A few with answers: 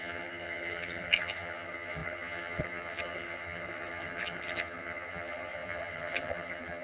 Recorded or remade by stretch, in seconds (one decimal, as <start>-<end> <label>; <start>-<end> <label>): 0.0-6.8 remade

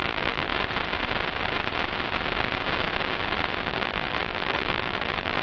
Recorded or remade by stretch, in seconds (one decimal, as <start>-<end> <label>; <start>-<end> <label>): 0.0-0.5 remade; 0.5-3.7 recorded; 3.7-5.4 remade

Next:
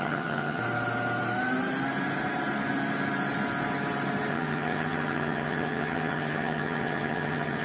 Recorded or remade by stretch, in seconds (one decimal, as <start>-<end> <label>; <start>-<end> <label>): 0.0-0.6 remade; 0.6-4.3 recorded; 4.3-7.6 remade

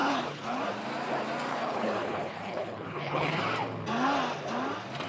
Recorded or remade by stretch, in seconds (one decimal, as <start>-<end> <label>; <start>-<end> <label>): 0.0-0.6 remade; 0.6-1.5 recorded; 1.5-3.4 remade; 3.4-5.1 recorded